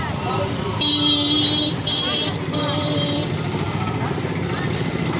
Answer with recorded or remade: recorded